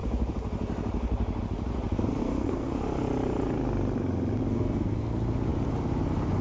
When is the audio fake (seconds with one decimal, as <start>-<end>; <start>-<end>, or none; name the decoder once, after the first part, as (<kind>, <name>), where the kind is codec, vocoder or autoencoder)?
2.2-2.8 (codec, SNAC); 4.5-5.1